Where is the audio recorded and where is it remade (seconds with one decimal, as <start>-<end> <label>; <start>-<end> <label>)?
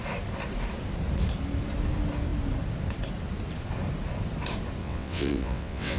0.0-4.8 recorded; 4.8-6.0 remade